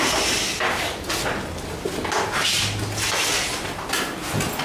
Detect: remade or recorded recorded